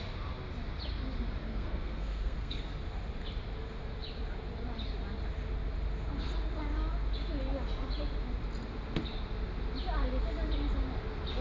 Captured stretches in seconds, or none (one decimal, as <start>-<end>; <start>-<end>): 0.0-1.5; 2.6-11.4